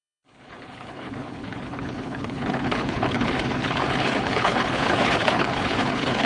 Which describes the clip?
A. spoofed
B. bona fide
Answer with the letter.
A